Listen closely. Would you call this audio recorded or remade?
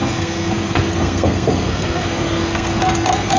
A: remade